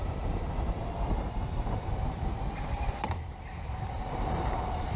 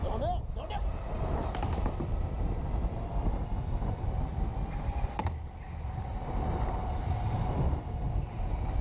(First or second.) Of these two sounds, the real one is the second